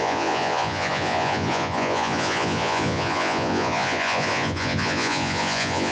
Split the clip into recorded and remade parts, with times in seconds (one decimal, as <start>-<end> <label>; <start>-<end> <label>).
0.0-5.9 remade